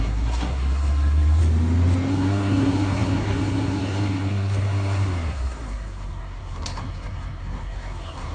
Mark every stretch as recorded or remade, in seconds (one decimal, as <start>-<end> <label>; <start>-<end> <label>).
0.0-1.4 remade; 1.4-2.1 recorded; 2.1-8.3 remade

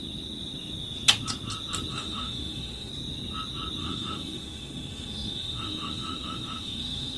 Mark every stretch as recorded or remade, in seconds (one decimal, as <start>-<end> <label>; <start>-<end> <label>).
0.0-1.9 recorded; 1.9-2.9 remade; 2.9-3.8 recorded; 3.8-7.2 remade

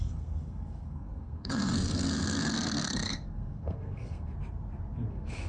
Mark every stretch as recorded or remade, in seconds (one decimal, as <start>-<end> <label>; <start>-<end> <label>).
0.0-4.3 remade; 4.3-5.1 recorded; 5.1-5.5 remade